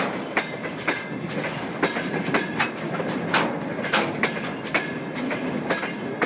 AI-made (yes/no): no